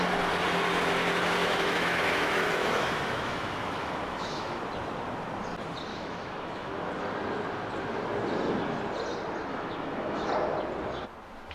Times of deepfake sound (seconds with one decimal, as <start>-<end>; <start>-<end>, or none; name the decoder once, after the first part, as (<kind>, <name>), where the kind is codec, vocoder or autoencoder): 1.4-4.6 (autoencoder, DAC-VAE); 5.9-6.7; 9.5-10.3